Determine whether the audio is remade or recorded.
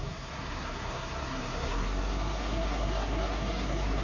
remade